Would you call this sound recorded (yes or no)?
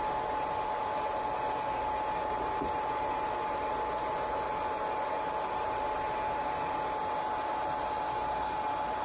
yes